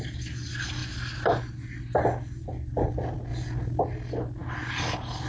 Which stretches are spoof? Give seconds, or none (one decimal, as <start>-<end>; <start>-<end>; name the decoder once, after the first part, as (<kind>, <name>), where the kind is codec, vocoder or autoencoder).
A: none